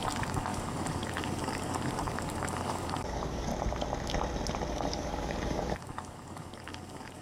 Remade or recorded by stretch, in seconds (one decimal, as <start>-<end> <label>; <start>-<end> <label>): 0.0-3.5 remade; 3.5-4.7 recorded; 4.7-7.2 remade